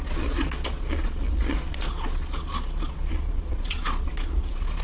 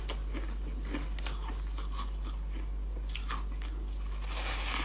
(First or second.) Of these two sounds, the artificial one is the first